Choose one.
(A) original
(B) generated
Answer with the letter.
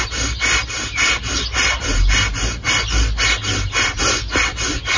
A